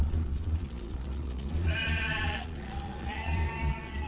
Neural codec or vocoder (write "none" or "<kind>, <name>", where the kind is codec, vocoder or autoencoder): vocoder, Vocos